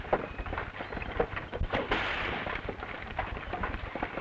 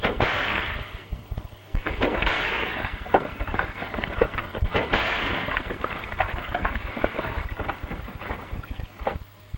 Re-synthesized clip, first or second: second